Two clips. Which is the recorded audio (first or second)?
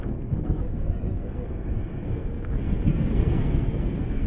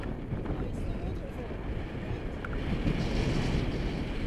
second